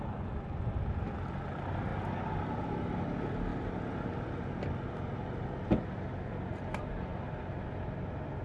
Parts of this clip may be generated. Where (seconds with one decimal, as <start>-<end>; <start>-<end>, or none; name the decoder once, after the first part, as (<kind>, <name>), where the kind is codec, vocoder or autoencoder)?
none